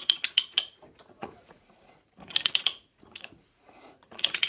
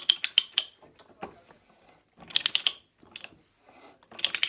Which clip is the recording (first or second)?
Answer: second